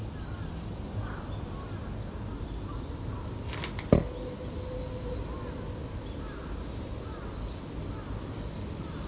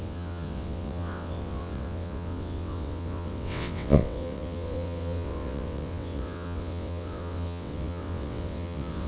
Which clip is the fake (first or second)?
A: second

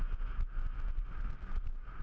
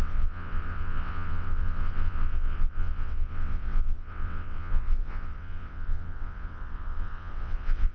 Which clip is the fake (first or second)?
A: second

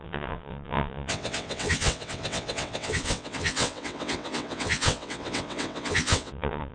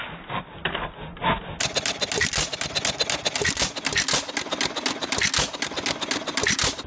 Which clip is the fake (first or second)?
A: first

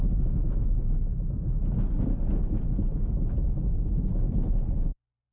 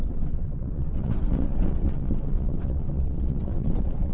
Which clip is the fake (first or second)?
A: second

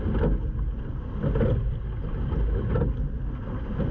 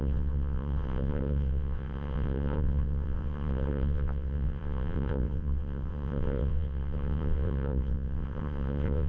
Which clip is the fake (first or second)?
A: second